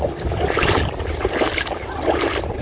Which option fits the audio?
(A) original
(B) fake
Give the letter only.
A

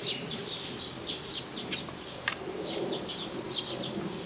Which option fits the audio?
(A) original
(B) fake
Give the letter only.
B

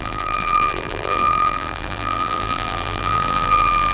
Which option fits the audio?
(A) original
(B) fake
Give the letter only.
B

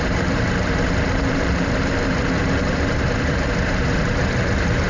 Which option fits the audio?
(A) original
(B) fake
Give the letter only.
B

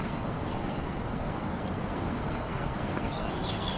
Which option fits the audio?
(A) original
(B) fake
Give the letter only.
B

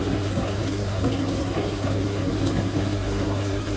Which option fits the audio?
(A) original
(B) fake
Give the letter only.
B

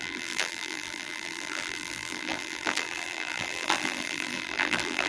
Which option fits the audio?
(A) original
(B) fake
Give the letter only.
B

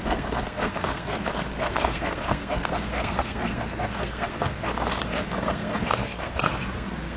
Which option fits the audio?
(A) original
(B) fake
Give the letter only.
B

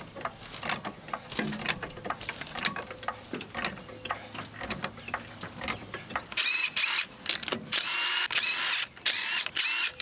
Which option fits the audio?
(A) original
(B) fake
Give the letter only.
A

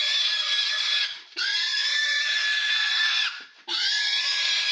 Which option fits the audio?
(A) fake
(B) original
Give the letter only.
B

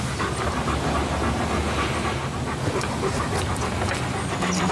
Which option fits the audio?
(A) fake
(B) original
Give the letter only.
B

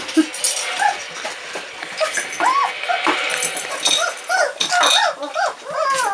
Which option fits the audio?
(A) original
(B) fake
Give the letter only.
A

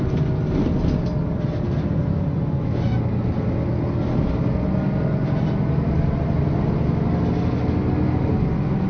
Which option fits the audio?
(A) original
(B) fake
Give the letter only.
A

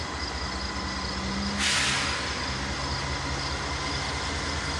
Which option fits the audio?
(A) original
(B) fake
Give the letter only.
A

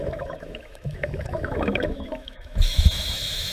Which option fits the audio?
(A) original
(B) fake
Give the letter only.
B